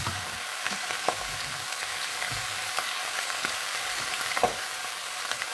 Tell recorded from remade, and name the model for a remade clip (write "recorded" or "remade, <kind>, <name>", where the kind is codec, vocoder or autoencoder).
remade, codec, DAC